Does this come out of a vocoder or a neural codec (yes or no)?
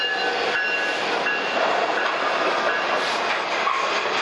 no